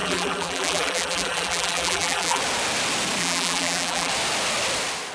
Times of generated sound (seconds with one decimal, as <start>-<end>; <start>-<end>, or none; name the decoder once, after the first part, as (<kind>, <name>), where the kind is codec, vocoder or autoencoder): 0.0-2.4 (vocoder, BigVGAN v2); 3.2-4.1